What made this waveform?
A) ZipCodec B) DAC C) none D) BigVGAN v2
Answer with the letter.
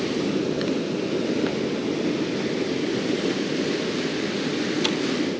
C